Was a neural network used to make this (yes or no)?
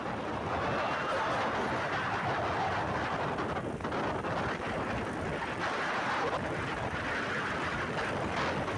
no